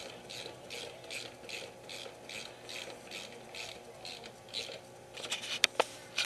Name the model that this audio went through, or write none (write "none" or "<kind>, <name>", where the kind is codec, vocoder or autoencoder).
none